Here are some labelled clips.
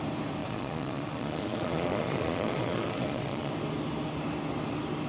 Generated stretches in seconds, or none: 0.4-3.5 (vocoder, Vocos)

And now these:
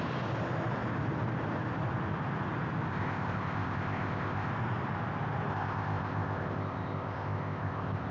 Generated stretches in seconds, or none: 2.9-4.5 (codec, ZipCodec); 5.5-8.1

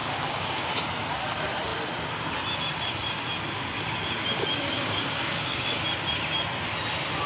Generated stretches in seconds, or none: 0.0-0.7 (codec, DAC); 4.6-5.7

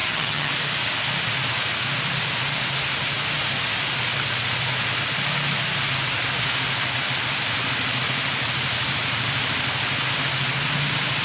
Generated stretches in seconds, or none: 0.0-0.5 (vocoder, HiFi-GAN)

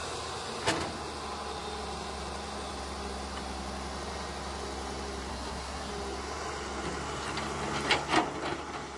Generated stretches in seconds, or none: 5.3-5.9 (codec, SNAC)

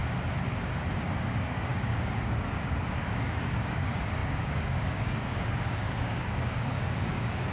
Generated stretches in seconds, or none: 0.9-7.5 (codec, DAC)